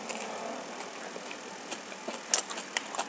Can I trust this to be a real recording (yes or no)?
yes